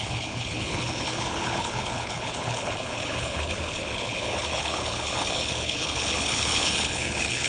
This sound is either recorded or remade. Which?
remade